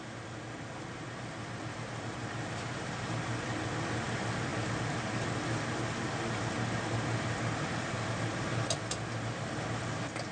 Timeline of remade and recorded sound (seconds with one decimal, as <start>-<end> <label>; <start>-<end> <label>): 0.0-10.3 recorded